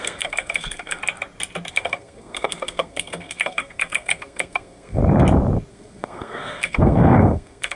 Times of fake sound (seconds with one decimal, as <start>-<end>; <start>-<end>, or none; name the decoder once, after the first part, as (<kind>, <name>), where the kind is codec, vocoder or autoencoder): 0.0-1.0 (codec, SNAC); 1.7-5.0; 5.7-7.8